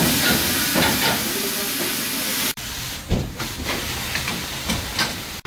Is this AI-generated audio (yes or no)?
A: yes